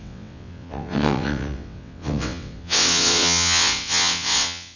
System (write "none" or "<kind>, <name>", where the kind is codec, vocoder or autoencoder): vocoder, WaveNeXt